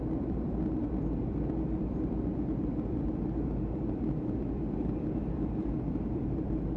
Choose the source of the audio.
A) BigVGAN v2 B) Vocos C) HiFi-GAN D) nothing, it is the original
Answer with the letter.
A